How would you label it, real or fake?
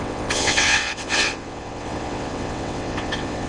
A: fake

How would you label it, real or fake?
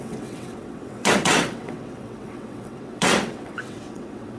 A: fake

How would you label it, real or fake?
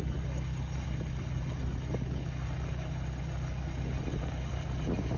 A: real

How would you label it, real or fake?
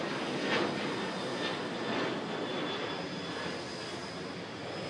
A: real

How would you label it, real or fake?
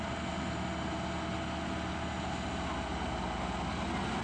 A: real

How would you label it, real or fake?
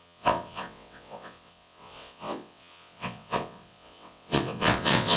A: fake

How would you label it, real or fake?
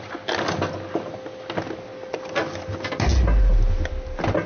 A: real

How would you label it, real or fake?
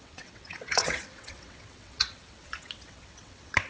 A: fake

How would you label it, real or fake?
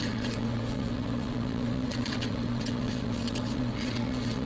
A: fake